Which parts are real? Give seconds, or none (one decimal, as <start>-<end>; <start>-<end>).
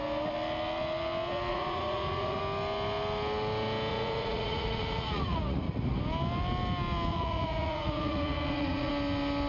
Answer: 0.0-1.5; 2.4-3.9; 6.0-7.1; 8.9-9.5